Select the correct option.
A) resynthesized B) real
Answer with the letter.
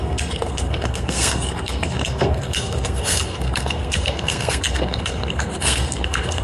A